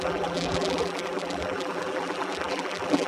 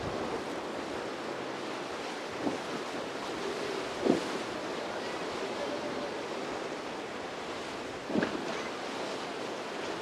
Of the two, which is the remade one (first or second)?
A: first